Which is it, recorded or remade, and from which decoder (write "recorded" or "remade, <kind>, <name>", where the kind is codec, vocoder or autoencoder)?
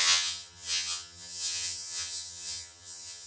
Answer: remade, vocoder, HiFi-GAN